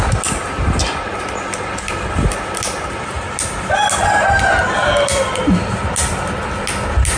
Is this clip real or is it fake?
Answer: real